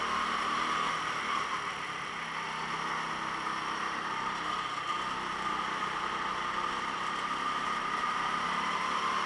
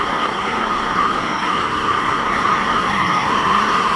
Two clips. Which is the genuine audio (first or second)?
first